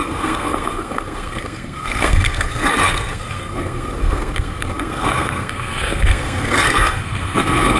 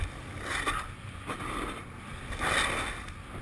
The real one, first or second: second